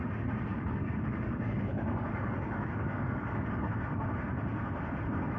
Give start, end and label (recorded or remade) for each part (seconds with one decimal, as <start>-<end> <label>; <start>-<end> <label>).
0.0-0.5 recorded; 0.5-3.7 remade; 3.7-5.4 recorded